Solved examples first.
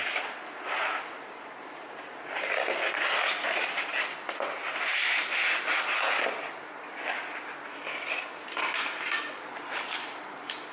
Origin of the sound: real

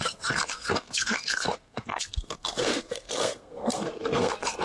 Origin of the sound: fake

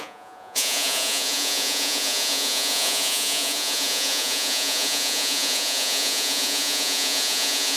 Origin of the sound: fake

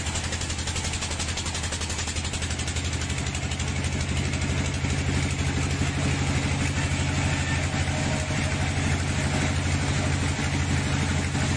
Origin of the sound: real